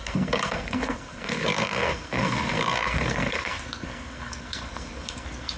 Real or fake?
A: fake